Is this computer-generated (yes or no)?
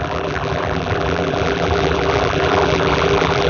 yes